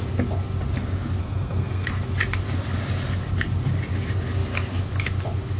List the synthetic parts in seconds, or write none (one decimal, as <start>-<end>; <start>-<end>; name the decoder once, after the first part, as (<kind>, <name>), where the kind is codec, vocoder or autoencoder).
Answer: 1.2-1.9 (codec, SNAC)